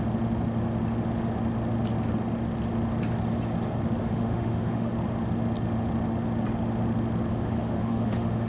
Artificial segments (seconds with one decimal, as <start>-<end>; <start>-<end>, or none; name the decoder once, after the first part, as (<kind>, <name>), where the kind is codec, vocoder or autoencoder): 4.0-4.9 (autoencoder, DAC-VAE); 7.3-8.5